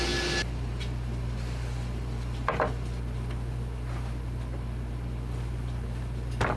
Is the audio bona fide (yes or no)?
yes